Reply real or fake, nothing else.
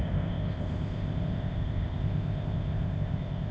fake